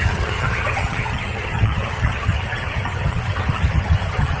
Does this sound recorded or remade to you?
remade